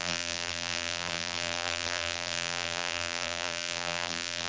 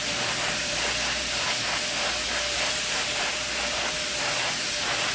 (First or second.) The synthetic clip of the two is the first